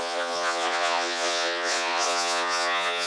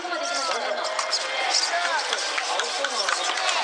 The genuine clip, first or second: second